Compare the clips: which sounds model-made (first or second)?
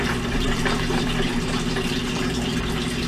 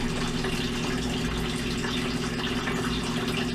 first